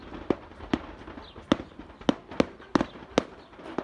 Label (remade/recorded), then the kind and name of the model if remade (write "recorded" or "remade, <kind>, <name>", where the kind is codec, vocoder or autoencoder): recorded